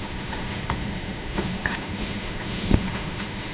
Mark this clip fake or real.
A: fake